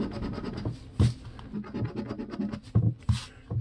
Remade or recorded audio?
recorded